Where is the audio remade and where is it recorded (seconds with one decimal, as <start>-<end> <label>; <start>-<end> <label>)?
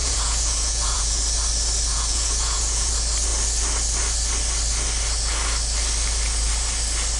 0.0-1.2 remade; 1.2-1.9 recorded; 1.9-2.9 remade; 2.9-7.2 recorded